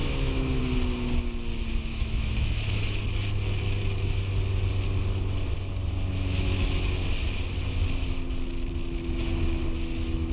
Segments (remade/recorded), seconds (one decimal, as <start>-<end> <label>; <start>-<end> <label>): 0.0-0.6 remade; 0.6-1.9 recorded; 1.9-3.0 remade; 3.0-10.3 recorded